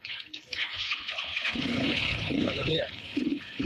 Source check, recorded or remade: remade